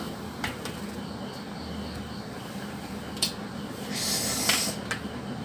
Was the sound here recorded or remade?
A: recorded